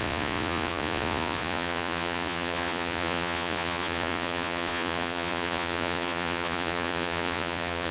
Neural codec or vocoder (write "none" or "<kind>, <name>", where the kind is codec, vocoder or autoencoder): vocoder, Vocos